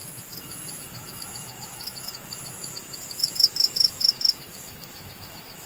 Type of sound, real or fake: fake